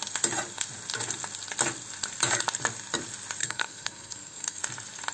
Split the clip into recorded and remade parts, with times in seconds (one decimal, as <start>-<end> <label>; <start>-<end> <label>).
0.0-3.4 recorded; 3.4-4.6 remade; 4.6-5.1 recorded